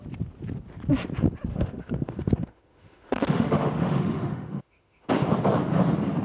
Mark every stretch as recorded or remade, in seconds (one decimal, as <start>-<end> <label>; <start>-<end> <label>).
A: 0.0-1.5 recorded; 1.5-5.1 remade; 5.1-6.2 recorded